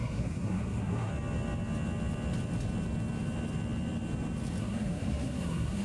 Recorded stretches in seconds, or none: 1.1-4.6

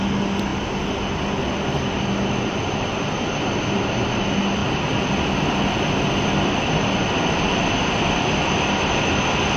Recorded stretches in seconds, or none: 0.0-9.6

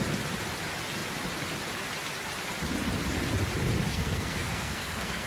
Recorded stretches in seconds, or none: 0.0-3.9

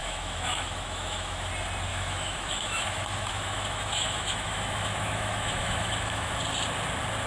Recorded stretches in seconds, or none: 1.5-1.9; 6.3-7.3

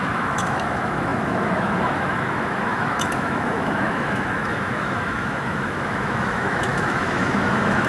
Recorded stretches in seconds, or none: none

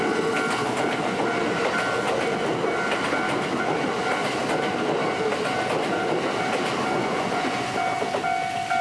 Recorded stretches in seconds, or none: 0.0-7.0; 7.7-8.8